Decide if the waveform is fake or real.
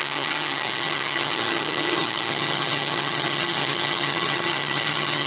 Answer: fake